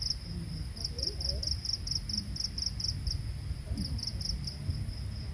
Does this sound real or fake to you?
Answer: real